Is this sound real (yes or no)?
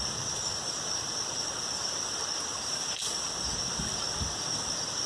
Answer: yes